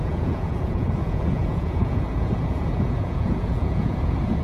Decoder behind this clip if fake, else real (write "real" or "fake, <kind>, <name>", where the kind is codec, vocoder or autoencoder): fake, vocoder, Vocos